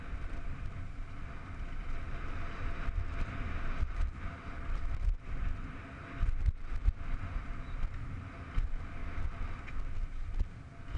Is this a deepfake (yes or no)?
no